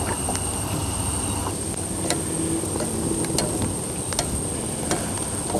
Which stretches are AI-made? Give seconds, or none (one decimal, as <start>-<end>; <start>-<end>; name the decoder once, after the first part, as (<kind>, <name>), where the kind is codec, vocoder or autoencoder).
none